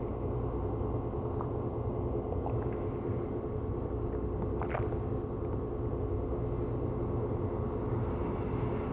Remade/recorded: recorded